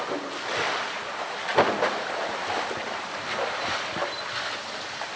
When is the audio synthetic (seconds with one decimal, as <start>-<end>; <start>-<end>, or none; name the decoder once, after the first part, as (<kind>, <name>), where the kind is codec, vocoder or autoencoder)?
none